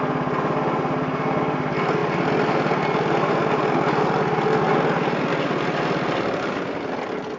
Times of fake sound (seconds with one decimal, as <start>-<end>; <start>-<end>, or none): none